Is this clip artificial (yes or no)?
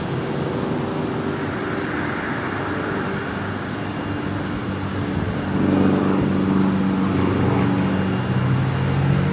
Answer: no